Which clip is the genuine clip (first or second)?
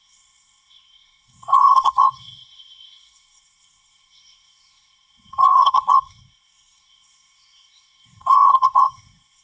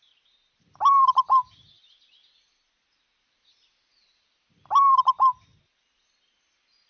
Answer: second